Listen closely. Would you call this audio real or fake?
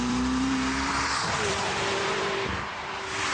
fake